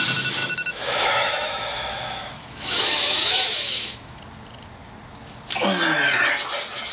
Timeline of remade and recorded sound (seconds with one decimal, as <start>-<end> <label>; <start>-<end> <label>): 0.0-0.4 recorded; 0.4-4.2 remade; 4.2-6.9 recorded